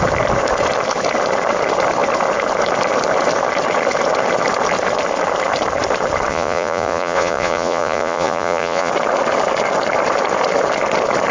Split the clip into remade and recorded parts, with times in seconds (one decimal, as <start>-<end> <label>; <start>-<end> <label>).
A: 0.0-6.3 recorded; 6.3-8.9 remade; 8.9-11.3 recorded